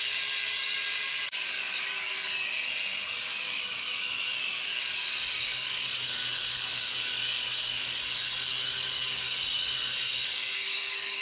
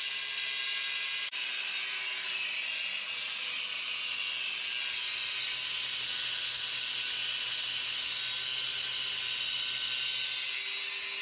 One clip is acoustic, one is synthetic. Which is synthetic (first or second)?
first